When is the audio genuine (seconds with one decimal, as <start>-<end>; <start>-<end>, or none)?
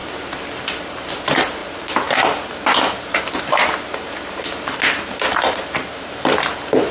0.0-6.9